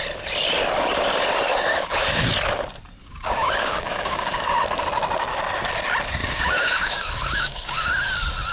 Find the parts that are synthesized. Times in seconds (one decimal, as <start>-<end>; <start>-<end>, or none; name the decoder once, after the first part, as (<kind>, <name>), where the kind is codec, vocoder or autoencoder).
1.5-2.3 (codec, DAC); 3.0-4.6; 6.2-7.9